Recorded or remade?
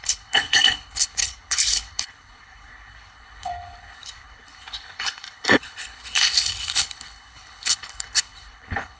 remade